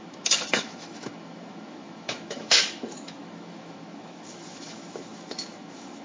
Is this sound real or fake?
fake